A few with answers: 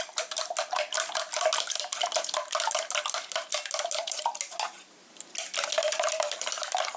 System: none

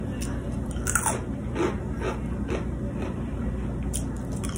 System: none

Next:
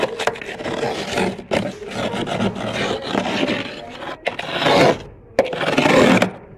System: none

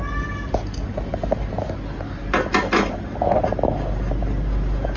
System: none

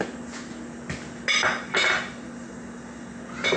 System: none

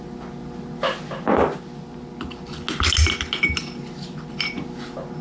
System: none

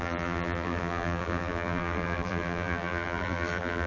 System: vocoder, BigVGAN v2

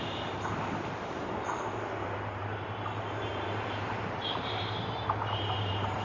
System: vocoder, BigVGAN v2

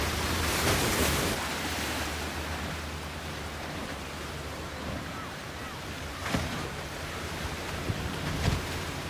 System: vocoder, BigVGAN v2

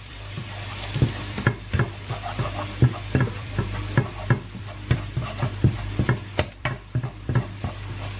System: vocoder, BigVGAN v2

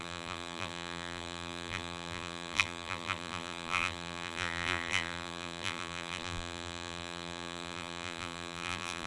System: vocoder, BigVGAN v2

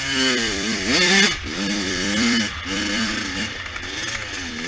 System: vocoder, BigVGAN v2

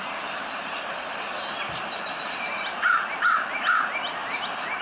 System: vocoder, BigVGAN v2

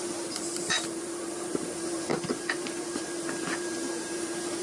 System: vocoder, BigVGAN v2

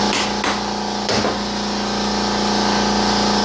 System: none